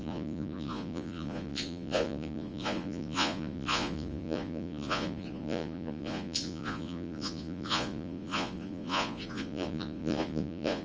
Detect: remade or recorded remade